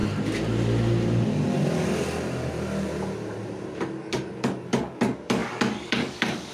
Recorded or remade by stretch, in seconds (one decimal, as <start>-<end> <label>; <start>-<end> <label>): 0.0-3.9 recorded; 3.9-6.5 remade